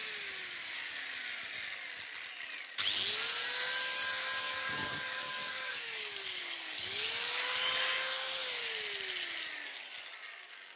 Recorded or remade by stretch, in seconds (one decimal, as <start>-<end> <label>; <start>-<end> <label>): 0.0-4.4 recorded; 4.4-8.4 remade; 8.4-10.4 recorded; 10.4-10.8 remade